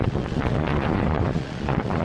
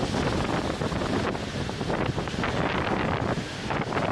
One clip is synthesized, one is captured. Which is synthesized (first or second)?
first